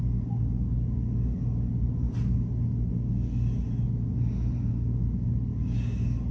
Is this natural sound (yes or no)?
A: yes